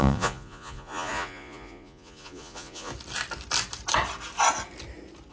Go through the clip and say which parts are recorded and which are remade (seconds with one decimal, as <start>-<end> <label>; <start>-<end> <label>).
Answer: 0.0-2.9 remade; 2.9-5.3 recorded